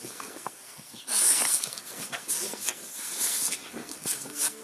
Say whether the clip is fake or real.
fake